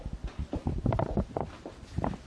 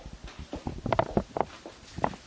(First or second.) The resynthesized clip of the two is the first